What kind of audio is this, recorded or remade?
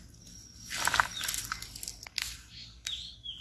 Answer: recorded